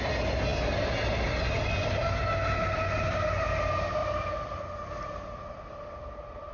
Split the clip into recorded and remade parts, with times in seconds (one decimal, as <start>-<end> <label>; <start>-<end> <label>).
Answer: 0.0-4.0 recorded; 4.0-4.6 remade; 4.6-6.5 recorded